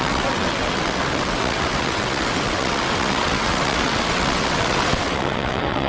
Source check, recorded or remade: remade